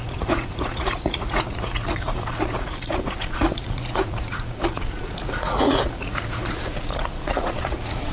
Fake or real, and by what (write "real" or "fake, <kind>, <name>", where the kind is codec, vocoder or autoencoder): fake, vocoder, Vocos